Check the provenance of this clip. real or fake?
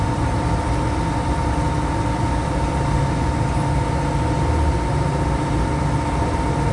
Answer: real